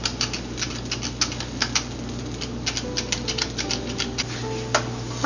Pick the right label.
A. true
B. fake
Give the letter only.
A